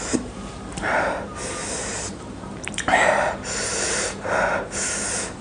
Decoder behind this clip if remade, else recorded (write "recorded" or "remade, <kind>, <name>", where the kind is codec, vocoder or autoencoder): remade, vocoder, BigVGAN v2